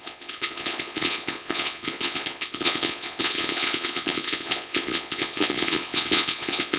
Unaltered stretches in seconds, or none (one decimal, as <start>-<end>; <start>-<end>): none